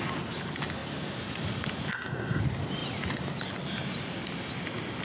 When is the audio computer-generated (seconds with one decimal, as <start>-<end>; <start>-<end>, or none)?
1.9-2.4